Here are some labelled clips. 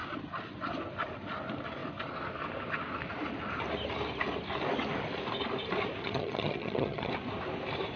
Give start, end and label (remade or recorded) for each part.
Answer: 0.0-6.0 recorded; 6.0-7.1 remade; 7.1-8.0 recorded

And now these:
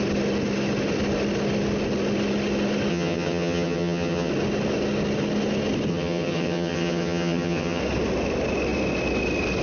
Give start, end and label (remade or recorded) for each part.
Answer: 0.0-2.9 recorded; 2.9-4.3 remade; 4.3-5.9 recorded; 5.9-7.8 remade; 7.8-9.6 recorded